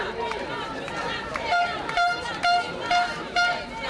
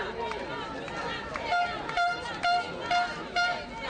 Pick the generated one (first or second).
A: first